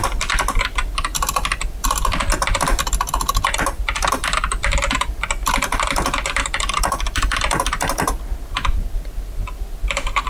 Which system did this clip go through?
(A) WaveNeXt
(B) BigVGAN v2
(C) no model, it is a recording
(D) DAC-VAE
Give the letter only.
C